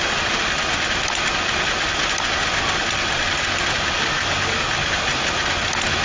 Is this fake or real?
real